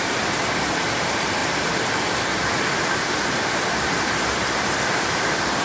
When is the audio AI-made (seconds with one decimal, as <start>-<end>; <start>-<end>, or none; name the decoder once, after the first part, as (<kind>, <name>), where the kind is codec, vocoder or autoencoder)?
1.4-4.8 (vocoder, BigVGAN v2)